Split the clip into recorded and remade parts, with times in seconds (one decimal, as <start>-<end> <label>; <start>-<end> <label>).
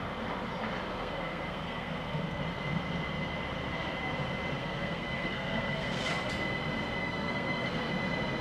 0.0-0.9 recorded; 0.9-2.4 remade; 2.4-4.6 recorded; 4.6-6.1 remade; 6.1-7.0 recorded; 7.0-7.9 remade; 7.9-8.4 recorded